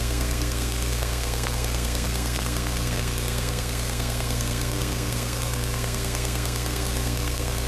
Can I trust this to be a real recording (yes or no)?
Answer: no